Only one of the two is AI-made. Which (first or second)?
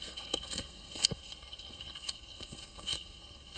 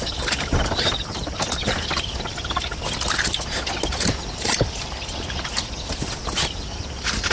first